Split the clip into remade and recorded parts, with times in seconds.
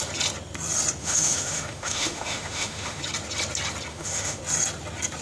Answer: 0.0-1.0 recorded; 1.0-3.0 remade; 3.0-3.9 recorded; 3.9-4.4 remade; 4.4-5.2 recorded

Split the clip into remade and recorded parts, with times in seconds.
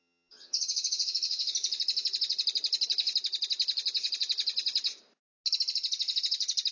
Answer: 0.0-1.5 remade; 1.5-6.7 recorded